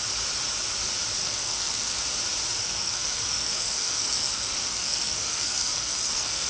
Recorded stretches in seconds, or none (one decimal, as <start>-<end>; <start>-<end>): 0.0-1.2; 2.0-2.6